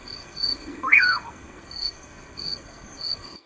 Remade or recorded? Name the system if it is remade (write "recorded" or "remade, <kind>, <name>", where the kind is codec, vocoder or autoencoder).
remade, codec, SNAC